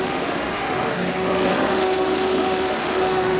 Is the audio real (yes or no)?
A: no